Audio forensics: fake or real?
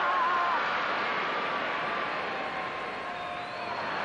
real